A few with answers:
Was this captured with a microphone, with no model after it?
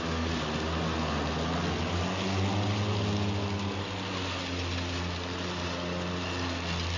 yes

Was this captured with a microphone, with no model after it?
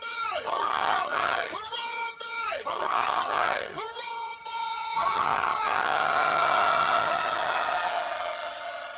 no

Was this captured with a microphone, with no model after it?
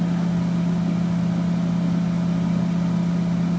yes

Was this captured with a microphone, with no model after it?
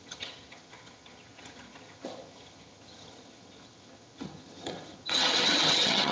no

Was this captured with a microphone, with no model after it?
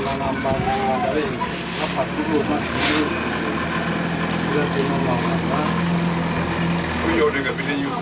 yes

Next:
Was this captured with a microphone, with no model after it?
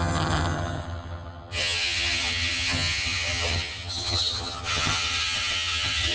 no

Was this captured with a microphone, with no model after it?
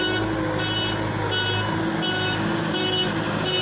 yes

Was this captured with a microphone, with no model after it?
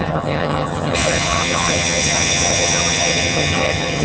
no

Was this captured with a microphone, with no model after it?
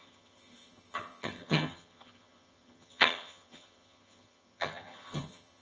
no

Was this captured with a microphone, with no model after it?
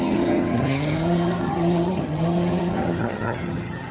no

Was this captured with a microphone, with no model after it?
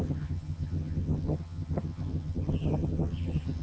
no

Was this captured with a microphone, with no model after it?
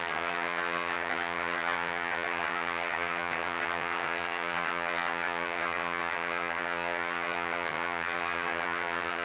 no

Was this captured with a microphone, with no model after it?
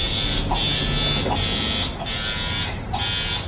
yes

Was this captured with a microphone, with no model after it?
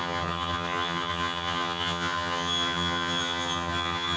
no